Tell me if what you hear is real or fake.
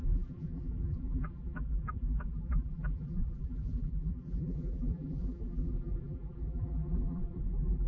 fake